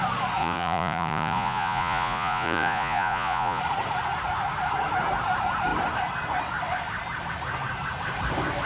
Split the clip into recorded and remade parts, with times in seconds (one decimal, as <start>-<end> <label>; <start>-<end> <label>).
0.0-0.4 recorded; 0.4-3.6 remade; 3.6-8.7 recorded